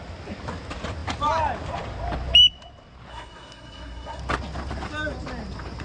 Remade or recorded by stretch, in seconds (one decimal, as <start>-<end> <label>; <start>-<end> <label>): 0.0-3.1 recorded; 3.1-4.2 remade; 4.2-5.8 recorded